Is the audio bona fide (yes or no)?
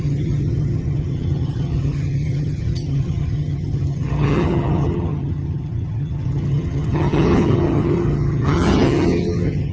no